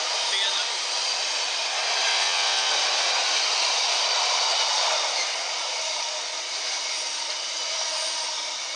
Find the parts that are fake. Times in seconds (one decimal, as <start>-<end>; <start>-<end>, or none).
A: 2.1-2.7